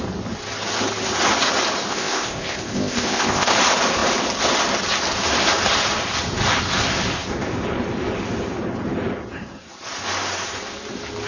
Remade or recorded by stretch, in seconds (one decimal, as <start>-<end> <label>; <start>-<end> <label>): 0.0-1.9 recorded; 1.9-3.5 remade; 3.5-11.3 recorded